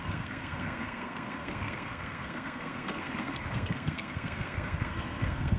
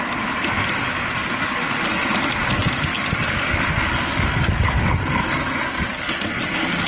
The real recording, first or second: second